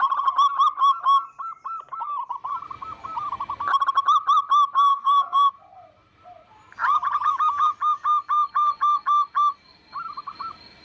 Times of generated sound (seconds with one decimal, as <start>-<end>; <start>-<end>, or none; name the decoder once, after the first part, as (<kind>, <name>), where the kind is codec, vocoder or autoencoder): 4.9-5.5 (codec, SNAC)